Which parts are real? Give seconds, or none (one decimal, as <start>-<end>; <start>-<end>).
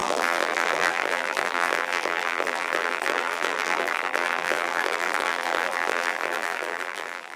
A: none